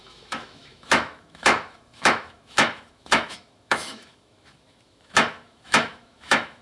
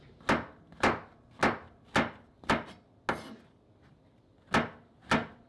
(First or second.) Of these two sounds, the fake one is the first